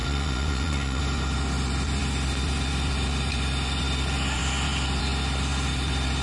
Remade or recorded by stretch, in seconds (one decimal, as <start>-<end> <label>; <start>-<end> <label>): 0.0-1.0 remade; 1.0-6.2 recorded

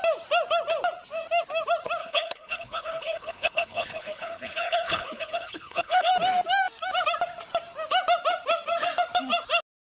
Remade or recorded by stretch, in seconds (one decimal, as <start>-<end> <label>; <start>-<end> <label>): 0.0-2.0 recorded; 2.0-6.1 remade; 6.1-9.8 recorded

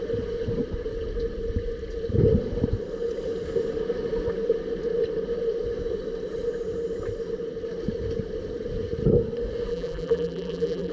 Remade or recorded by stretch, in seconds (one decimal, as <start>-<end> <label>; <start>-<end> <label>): 0.0-9.7 recorded; 9.7-10.9 remade

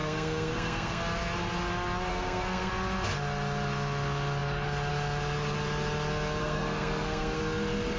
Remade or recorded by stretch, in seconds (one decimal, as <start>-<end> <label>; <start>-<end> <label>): 0.0-1.0 remade; 1.0-2.1 recorded; 2.1-2.7 remade; 2.7-6.4 recorded; 6.4-7.4 remade; 7.4-8.0 recorded

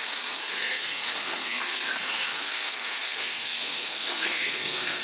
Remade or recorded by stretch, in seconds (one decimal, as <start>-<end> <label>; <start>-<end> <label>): 0.0-5.0 remade

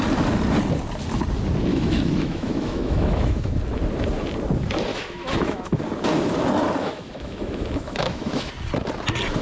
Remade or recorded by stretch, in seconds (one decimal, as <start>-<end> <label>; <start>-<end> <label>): 0.0-1.7 recorded; 1.7-3.6 remade; 3.6-4.9 recorded; 4.9-5.8 remade; 5.8-6.8 recorded; 6.8-8.5 remade; 8.5-9.4 recorded